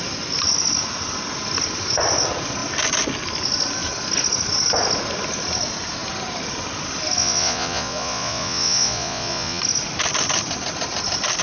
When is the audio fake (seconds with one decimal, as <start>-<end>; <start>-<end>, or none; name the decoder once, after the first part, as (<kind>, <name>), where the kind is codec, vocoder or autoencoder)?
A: 7.2-9.6 (vocoder, Vocos)